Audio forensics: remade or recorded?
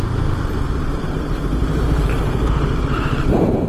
remade